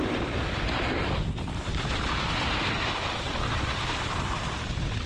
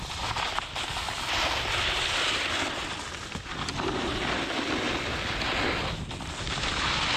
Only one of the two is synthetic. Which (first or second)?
first